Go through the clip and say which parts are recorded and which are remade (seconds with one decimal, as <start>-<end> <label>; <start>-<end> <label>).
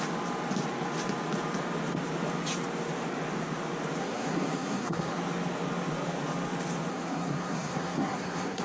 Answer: 0.0-4.0 recorded; 4.0-5.2 remade; 5.2-6.9 recorded; 6.9-8.6 remade